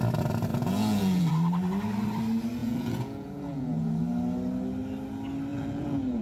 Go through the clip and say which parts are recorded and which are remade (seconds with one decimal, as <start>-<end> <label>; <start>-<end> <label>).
0.0-0.5 recorded; 0.5-1.3 remade; 1.3-2.6 recorded; 2.6-4.0 remade; 4.0-5.5 recorded; 5.5-6.2 remade